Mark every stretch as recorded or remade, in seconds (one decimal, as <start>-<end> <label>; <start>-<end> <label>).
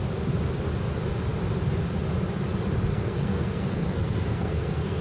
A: 0.0-2.9 recorded; 2.9-5.0 remade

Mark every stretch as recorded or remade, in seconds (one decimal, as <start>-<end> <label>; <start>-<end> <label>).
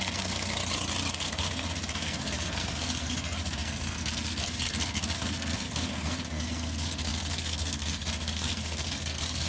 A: 0.0-0.6 remade; 0.6-1.1 recorded; 1.1-9.5 remade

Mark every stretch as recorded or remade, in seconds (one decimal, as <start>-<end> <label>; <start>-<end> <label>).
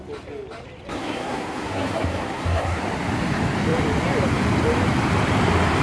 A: 0.0-0.9 recorded; 0.9-2.8 remade; 2.8-5.8 recorded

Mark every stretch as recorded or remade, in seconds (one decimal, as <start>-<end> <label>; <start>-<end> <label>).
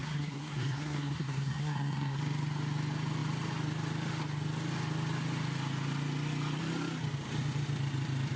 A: 0.0-2.2 remade; 2.2-8.4 recorded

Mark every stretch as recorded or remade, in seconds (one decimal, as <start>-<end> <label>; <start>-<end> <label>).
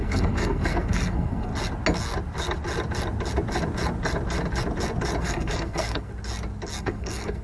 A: 0.0-1.5 remade; 1.5-5.2 recorded; 5.2-6.1 remade; 6.1-6.8 recorded; 6.8-7.4 remade